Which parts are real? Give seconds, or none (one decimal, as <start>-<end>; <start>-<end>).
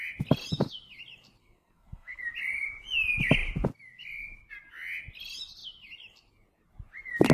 0.0-1.4; 2.2-7.3